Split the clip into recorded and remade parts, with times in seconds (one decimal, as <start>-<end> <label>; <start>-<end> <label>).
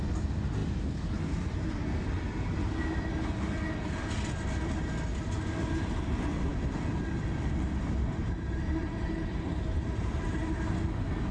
0.0-8.2 recorded; 8.2-10.7 remade; 10.7-11.3 recorded